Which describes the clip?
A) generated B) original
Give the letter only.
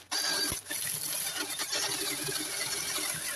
B